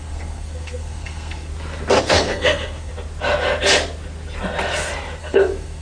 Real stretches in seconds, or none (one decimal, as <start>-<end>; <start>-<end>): 1.5-2.0; 2.9-5.2